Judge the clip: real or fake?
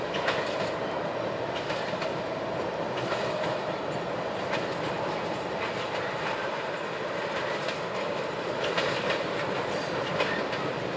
real